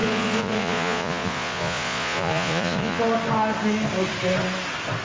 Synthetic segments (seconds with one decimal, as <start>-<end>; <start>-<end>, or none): 0.0-3.0